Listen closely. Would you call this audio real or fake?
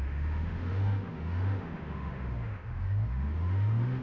fake